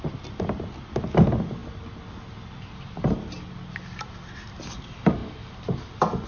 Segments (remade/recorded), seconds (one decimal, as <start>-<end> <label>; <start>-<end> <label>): 0.0-6.3 recorded